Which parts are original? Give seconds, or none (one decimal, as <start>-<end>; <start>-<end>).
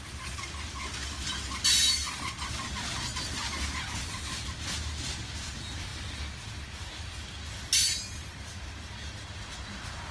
0.0-10.1